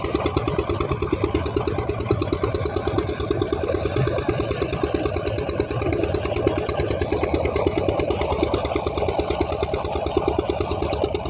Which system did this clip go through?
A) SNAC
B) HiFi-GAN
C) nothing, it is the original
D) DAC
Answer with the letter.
C